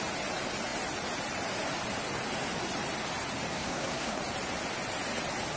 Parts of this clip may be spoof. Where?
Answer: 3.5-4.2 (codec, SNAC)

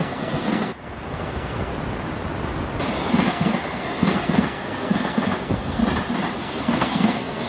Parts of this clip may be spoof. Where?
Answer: 0.0-1.7 (codec, SNAC); 3.1-5.8; 6.4-7.5

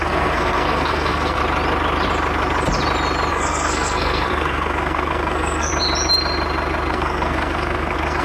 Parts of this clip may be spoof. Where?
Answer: 0.0-1.4 (codec, SNAC); 3.3-5.7; 6.9-8.2

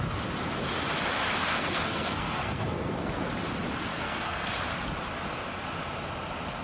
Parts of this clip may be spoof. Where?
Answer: 1.4-3.3 (codec, SNAC); 3.9-4.5

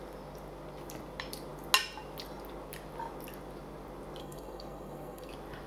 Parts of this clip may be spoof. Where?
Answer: 4.2-5.3 (codec, SNAC)

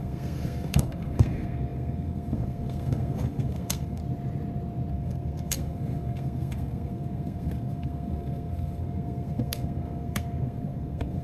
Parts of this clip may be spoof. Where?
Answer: 0.0-4.0 (codec, SNAC); 4.9-11.2

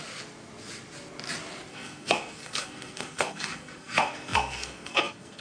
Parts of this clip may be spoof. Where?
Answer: 1.7-5.4 (codec, SNAC)

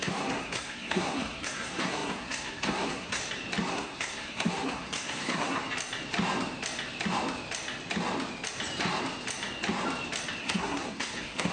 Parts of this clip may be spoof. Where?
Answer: 0.0-3.2 (codec, SNAC); 3.7-5.6; 10.4-11.5